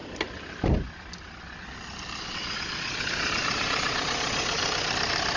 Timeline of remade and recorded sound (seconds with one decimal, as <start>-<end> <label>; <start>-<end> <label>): 0.0-2.2 recorded; 2.2-4.6 remade; 4.6-5.4 recorded